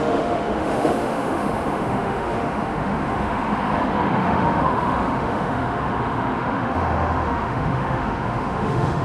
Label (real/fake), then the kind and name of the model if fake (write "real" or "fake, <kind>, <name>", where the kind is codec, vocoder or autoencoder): fake, autoencoder, DAC-VAE